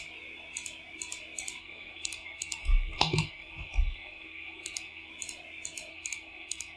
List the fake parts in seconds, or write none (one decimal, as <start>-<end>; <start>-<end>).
1.6-5.1; 5.9-6.8